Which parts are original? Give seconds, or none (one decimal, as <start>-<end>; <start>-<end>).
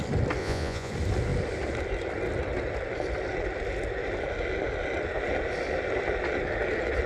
0.0-0.4; 0.9-7.1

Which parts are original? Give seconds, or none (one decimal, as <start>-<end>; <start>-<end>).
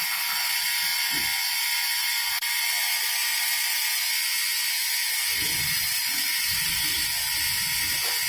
0.0-3.2; 4.0-5.0; 7.1-8.3